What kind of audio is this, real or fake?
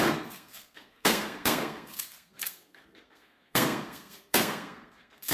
fake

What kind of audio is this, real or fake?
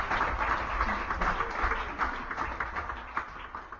real